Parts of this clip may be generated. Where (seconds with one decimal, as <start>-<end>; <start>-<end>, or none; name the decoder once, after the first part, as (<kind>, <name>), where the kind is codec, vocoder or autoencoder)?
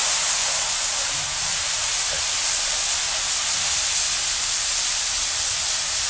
1.4-3.0 (vocoder, BigVGAN v2); 4.4-6.1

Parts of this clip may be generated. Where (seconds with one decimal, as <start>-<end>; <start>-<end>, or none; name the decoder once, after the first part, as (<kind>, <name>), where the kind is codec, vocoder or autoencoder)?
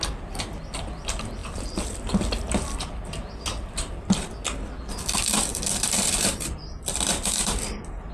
5.5-7.6 (vocoder, BigVGAN v2)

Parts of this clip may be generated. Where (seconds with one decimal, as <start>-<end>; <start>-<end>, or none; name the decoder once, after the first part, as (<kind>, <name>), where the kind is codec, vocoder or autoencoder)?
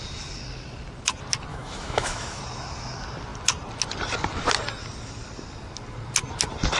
1.5-2.4 (autoencoder, DAC-VAE)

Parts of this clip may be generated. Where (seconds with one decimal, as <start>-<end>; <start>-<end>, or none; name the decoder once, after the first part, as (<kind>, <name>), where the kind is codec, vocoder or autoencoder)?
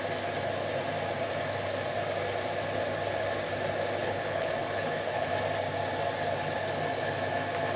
4.0-5.3 (codec, HILCodec)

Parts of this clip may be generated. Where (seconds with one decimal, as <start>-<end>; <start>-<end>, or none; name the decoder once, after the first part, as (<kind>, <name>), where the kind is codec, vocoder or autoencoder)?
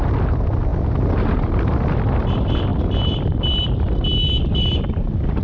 0.7-2.1 (vocoder, BigVGAN v2); 2.7-5.4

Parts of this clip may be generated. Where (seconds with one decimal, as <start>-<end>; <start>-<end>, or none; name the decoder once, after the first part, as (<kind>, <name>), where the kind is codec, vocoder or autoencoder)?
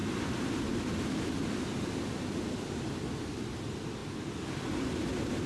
none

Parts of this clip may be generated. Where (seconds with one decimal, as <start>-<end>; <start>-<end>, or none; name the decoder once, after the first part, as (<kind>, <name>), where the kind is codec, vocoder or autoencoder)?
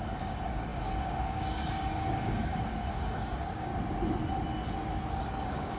0.0-3.7 (codec, DAC); 5.2-5.8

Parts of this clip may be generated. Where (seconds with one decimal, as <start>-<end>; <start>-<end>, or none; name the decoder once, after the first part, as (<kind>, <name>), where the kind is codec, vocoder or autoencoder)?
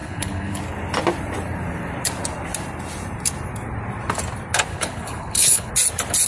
0.0-0.6 (codec, HILCodec); 4.7-5.7